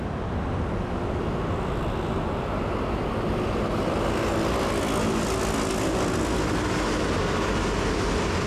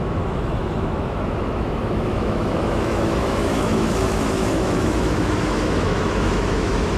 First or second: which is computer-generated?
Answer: second